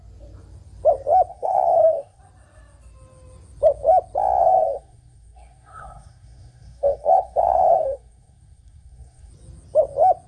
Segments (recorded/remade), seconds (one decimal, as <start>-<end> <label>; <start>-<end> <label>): 0.0-1.3 recorded; 1.3-2.2 remade; 2.2-4.4 recorded; 4.4-9.3 remade; 9.3-10.3 recorded